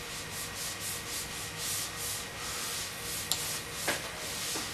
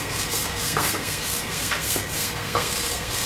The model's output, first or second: second